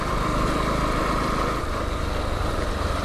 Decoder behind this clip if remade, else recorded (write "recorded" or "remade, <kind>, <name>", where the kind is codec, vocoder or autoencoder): recorded